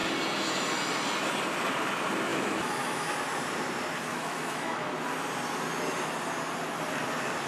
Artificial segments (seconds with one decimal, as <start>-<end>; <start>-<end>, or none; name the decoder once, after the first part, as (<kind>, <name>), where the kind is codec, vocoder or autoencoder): 2.3-3.1 (autoencoder, DAC-VAE); 4.1-4.9